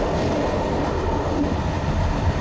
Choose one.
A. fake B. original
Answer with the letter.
B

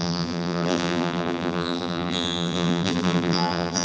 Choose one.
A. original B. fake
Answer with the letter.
B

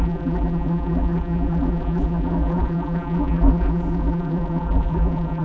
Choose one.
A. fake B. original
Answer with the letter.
A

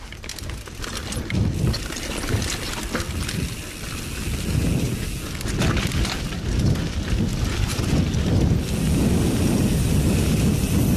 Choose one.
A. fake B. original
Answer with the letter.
B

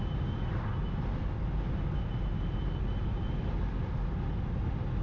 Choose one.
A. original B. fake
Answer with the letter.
A